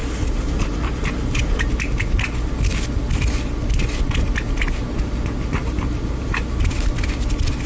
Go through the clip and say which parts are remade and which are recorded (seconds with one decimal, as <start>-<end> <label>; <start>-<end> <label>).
0.0-1.6 remade; 1.6-5.6 recorded; 5.6-6.5 remade; 6.5-7.7 recorded